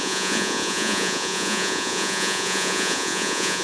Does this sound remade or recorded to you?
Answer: remade